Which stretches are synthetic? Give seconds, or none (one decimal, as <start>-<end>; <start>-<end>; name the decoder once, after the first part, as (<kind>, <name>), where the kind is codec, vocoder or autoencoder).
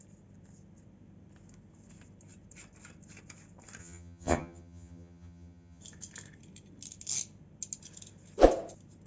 3.8-5.8 (vocoder, HiFi-GAN)